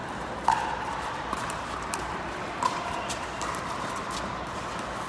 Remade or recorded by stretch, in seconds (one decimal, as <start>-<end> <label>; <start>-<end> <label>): 0.0-5.1 remade

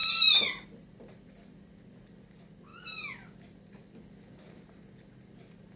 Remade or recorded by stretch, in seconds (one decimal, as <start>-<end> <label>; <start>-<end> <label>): 0.0-5.8 recorded

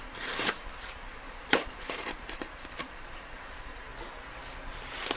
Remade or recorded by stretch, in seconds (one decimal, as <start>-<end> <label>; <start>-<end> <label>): 0.0-3.9 remade; 3.9-5.2 recorded

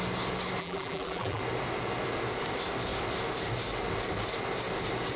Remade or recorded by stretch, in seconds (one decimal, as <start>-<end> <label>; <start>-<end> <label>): 0.0-0.6 recorded; 0.6-1.4 remade; 1.4-5.2 recorded

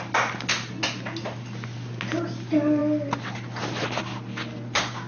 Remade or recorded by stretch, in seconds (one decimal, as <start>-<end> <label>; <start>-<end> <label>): 0.0-5.1 recorded

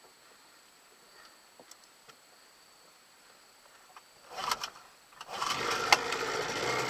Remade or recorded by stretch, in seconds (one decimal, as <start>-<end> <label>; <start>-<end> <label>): 0.0-4.4 recorded; 4.4-5.3 remade; 5.3-6.9 recorded